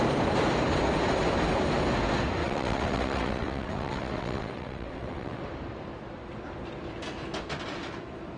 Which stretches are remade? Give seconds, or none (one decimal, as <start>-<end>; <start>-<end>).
2.4-5.4